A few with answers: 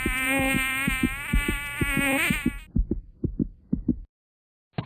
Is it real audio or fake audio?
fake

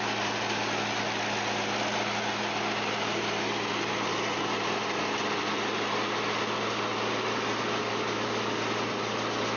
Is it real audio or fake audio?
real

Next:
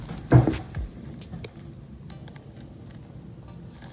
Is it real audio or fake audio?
real